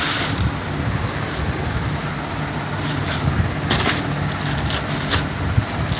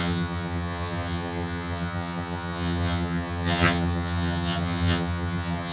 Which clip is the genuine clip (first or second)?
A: first